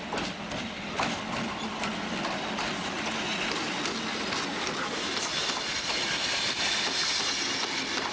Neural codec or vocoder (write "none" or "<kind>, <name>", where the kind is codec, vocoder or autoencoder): none